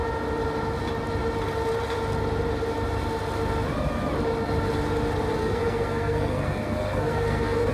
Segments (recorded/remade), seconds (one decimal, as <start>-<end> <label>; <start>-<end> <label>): 0.0-5.4 recorded; 5.4-7.7 remade